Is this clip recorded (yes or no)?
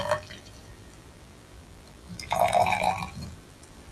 no